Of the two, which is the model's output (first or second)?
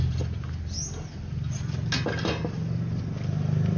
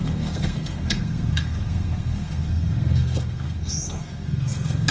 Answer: second